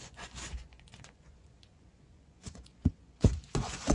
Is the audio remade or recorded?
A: remade